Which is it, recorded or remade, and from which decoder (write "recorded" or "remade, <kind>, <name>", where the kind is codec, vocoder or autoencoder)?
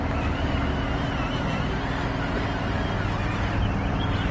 recorded